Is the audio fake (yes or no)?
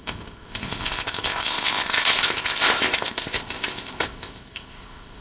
yes